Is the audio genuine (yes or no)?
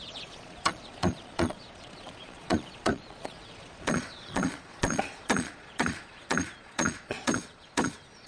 no